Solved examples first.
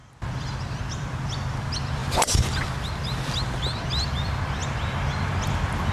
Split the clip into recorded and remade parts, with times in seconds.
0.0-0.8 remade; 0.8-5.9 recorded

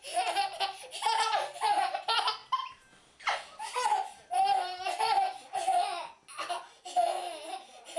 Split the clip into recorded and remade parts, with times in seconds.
0.0-8.0 recorded

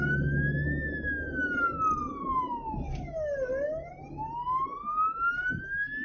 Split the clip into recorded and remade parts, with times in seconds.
0.0-6.0 recorded

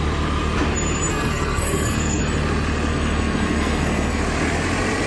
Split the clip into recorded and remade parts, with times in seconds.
0.0-1.1 recorded; 1.1-2.2 remade; 2.2-2.9 recorded; 2.9-4.2 remade; 4.2-5.1 recorded

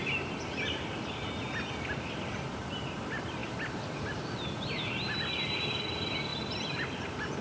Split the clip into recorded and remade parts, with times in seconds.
0.0-3.4 recorded; 3.4-4.8 remade; 4.8-6.3 recorded; 6.3-7.4 remade

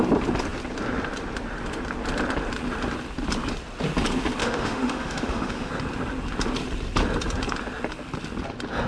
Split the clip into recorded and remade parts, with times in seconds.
0.0-4.4 recorded; 4.4-5.7 remade; 5.7-8.9 recorded

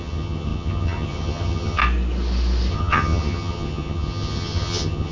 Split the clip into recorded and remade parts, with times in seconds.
0.0-1.8 remade; 1.8-2.7 recorded; 2.7-5.1 remade

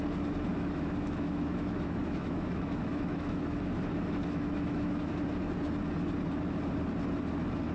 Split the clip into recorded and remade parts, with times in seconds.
0.0-0.5 recorded; 0.5-5.1 remade; 5.1-7.7 recorded